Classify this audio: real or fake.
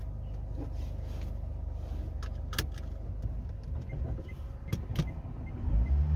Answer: real